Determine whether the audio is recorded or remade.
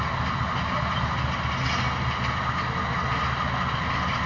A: recorded